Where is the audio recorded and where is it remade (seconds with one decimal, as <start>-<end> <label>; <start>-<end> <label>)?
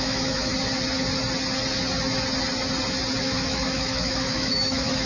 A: 0.0-0.5 remade; 0.5-3.2 recorded; 3.2-5.1 remade